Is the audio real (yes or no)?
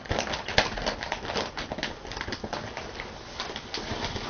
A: yes